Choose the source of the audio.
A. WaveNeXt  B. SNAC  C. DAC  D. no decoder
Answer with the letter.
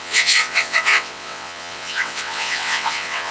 A